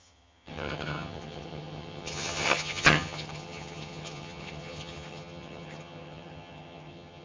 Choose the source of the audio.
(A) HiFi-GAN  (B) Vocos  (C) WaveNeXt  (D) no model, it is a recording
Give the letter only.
A